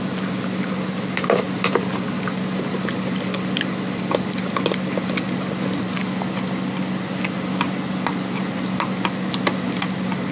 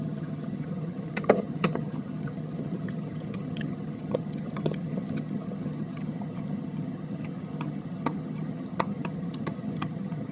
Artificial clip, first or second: second